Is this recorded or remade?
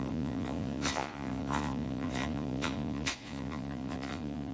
remade